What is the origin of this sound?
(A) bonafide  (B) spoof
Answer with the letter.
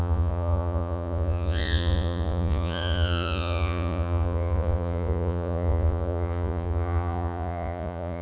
B